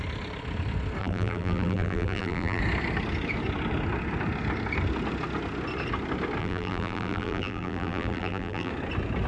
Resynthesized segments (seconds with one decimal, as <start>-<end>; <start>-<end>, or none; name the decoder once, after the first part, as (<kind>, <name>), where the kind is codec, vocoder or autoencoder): 1.0-2.6 (vocoder, BigVGAN v2); 6.4-8.7